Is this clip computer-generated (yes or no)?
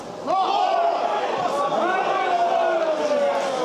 no